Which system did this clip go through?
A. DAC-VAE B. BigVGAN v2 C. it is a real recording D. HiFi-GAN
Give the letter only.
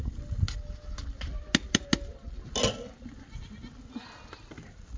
C